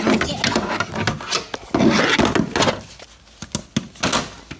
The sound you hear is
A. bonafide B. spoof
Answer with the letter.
A